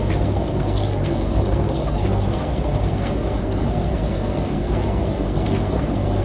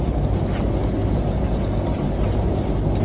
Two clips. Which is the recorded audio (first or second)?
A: second